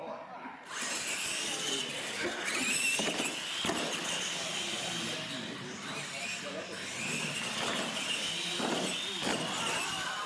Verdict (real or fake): real